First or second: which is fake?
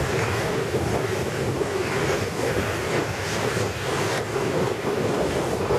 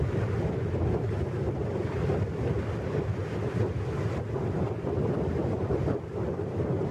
first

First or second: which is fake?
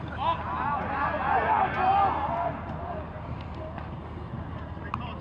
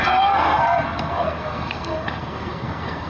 second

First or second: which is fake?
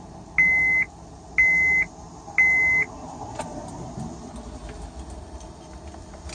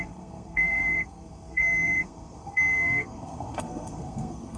second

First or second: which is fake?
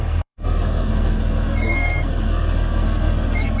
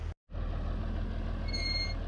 first